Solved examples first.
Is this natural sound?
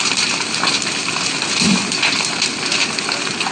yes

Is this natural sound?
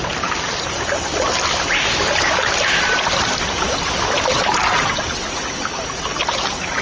yes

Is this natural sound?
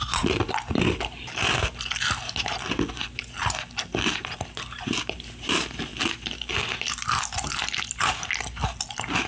yes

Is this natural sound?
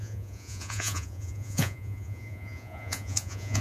no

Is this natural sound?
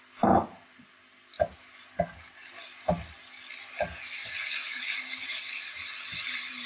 yes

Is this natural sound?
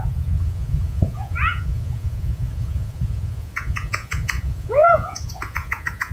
no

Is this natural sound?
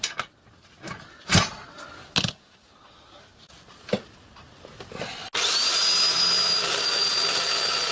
yes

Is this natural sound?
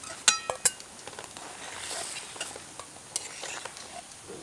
yes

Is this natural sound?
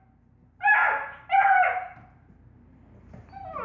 yes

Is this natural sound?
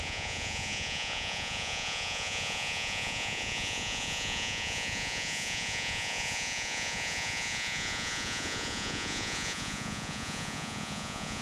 no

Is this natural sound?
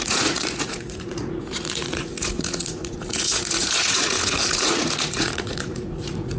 no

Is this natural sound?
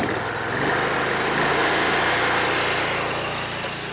yes